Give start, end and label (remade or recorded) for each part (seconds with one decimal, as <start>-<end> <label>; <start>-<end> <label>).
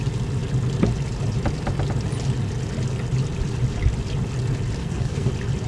0.0-4.8 recorded; 4.8-5.3 remade; 5.3-5.7 recorded